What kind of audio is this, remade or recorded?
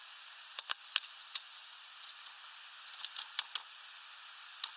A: recorded